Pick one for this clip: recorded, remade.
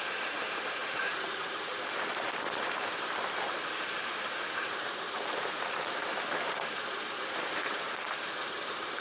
remade